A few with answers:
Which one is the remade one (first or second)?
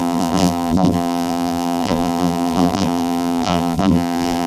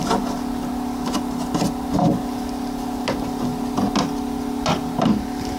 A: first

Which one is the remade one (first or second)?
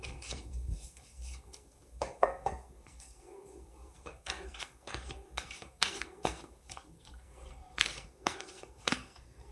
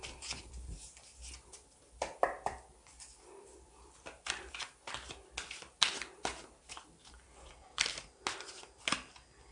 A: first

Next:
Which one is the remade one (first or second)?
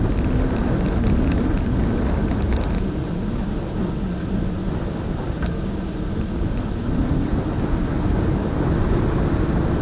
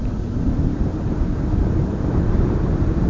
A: second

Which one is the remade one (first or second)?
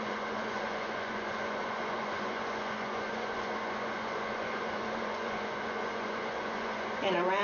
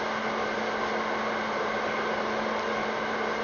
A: first